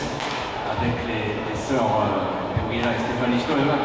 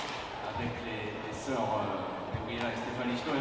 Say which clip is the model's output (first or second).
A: first